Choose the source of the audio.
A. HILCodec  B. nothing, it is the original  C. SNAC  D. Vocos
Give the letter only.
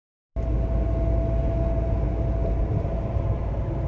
B